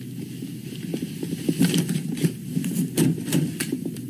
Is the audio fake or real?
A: real